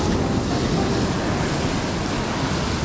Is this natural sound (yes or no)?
yes